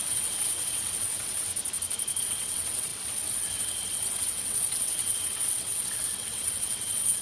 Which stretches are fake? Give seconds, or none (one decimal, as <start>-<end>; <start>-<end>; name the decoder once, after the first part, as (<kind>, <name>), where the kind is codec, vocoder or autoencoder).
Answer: 0.0-1.5 (vocoder, WaveNeXt); 2.2-7.2